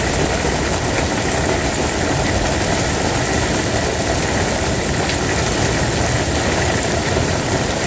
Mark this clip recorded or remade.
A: recorded